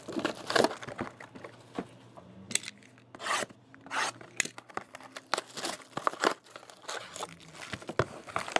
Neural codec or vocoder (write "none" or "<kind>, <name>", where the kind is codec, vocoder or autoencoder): none